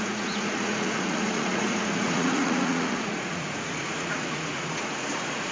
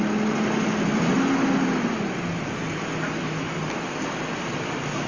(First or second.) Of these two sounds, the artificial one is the first